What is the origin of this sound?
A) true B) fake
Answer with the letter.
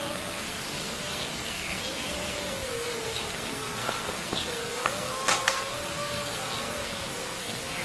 B